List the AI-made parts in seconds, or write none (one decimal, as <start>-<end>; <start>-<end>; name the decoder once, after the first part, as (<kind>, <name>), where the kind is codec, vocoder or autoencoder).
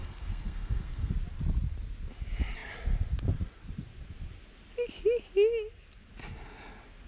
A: 0.0-1.1 (codec, SNAC)